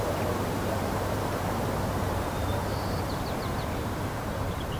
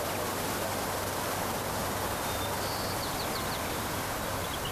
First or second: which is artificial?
first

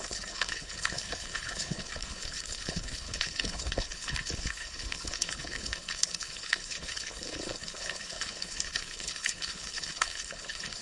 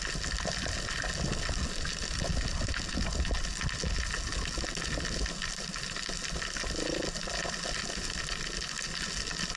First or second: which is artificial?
first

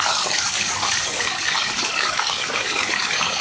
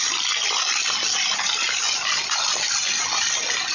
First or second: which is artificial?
first